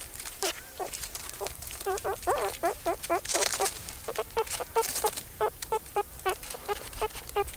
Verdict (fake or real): fake